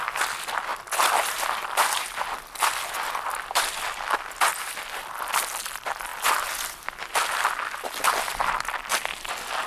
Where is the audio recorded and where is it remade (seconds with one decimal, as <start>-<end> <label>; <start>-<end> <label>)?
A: 0.0-9.7 recorded